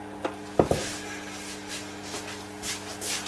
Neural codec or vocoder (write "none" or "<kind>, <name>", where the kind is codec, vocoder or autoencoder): none